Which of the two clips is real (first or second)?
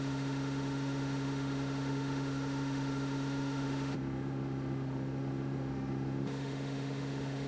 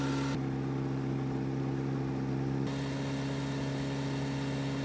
second